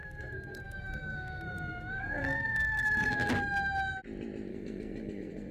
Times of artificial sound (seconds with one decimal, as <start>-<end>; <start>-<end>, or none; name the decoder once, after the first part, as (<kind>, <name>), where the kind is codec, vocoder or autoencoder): 0.0-3.3 (codec, SNAC); 4.5-5.5